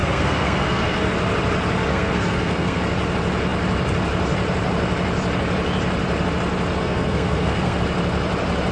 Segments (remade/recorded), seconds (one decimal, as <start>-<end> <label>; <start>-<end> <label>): 0.0-1.1 remade; 1.1-1.9 recorded; 1.9-2.8 remade; 2.8-6.8 recorded; 6.8-7.8 remade; 7.8-8.7 recorded